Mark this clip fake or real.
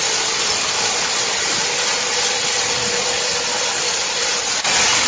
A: real